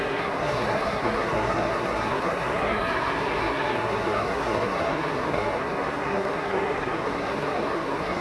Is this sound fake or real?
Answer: fake